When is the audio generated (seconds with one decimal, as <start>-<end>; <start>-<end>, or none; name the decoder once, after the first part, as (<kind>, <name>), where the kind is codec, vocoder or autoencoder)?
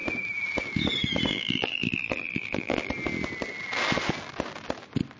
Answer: 1.3-2.9 (vocoder, BigVGAN v2)